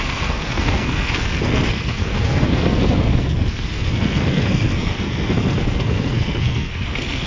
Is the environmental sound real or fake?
fake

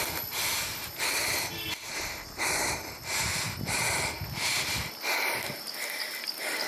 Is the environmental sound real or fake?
real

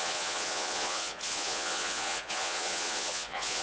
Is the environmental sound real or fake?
fake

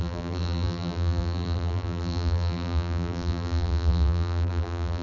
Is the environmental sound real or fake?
fake